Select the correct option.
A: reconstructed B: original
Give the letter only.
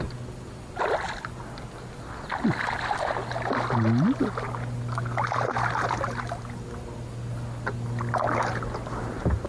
B